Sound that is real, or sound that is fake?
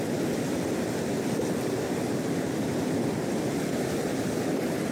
fake